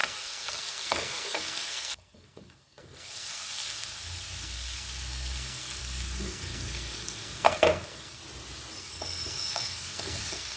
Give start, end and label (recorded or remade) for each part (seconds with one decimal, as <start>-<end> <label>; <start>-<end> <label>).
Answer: 0.0-8.2 remade; 8.2-8.8 recorded; 8.8-10.6 remade